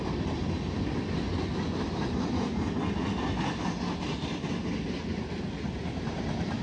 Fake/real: real